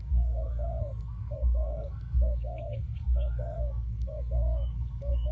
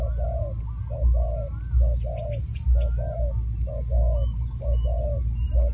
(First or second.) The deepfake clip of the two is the first